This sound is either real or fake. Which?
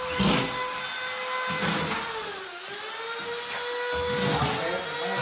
real